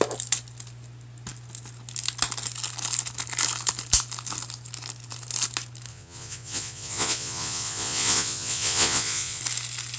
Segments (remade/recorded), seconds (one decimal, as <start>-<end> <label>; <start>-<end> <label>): 0.0-5.9 recorded; 5.9-9.4 remade; 9.4-10.0 recorded